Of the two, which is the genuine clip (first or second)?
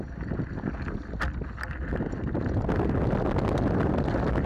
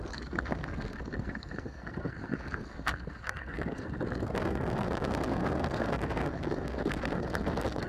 first